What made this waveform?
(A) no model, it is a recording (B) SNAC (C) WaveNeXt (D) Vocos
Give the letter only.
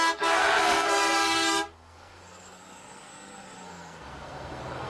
B